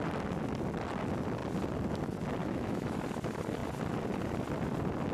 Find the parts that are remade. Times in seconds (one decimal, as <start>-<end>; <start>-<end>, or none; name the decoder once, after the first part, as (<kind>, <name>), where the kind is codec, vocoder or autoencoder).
2.4-3.0 (autoencoder, DAC-VAE)